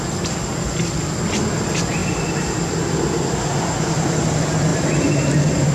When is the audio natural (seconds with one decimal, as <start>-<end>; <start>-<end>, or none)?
0.0-2.0; 3.1-5.7